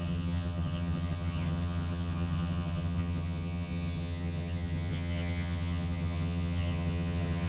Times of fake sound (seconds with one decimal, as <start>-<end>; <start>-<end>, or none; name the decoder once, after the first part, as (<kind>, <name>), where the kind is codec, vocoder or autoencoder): 0.0-7.5 (vocoder, HiFi-GAN)